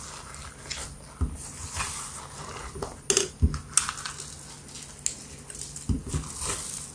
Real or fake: real